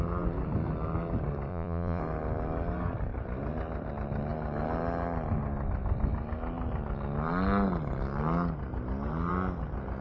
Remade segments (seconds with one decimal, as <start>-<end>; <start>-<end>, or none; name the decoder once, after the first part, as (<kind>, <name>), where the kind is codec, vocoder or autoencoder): 1.5-2.0 (vocoder, Vocos)